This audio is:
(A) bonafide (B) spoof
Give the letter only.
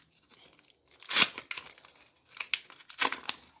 A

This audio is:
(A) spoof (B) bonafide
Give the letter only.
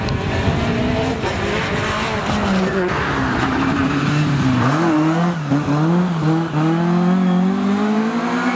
B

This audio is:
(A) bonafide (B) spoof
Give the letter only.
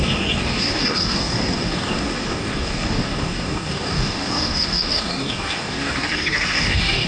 B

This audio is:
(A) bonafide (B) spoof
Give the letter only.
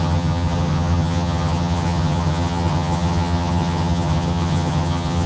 B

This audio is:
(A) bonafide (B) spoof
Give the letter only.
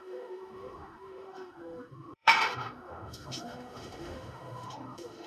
B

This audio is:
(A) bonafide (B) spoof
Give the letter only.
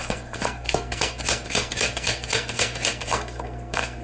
B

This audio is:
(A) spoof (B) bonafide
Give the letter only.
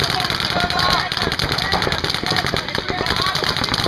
B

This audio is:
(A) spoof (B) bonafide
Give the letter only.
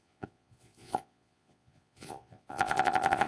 A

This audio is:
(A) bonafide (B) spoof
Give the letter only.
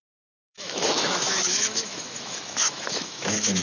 B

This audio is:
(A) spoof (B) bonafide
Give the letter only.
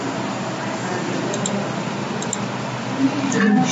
B